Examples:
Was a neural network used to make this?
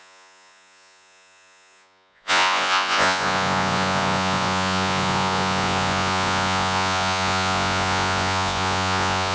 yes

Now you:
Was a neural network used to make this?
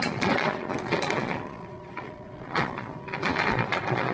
yes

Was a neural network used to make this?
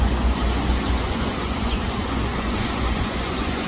yes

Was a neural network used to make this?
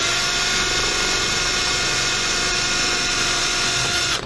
yes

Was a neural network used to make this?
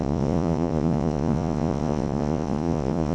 yes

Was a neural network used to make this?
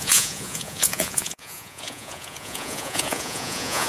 yes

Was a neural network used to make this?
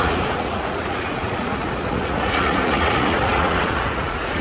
yes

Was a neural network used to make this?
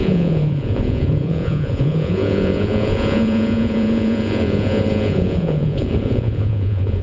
yes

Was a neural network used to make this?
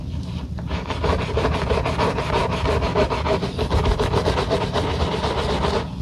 no